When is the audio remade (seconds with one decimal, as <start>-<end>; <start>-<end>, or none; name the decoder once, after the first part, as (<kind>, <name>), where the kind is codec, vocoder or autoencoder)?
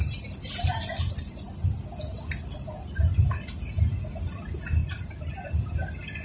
none